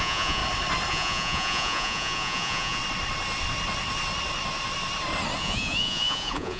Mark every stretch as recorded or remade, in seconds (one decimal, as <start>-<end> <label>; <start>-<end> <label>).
0.0-0.4 remade; 0.4-0.9 recorded; 0.9-2.8 remade; 2.8-5.4 recorded; 5.4-6.6 remade